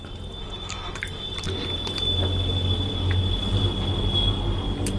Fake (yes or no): no